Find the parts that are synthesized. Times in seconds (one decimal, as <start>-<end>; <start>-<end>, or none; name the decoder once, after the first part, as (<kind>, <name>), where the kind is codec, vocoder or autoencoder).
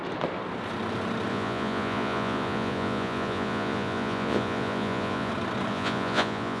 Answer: 1.3-5.3 (vocoder, Vocos); 5.7-6.6